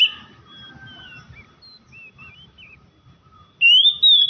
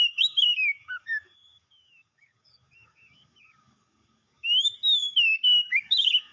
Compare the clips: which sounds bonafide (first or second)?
first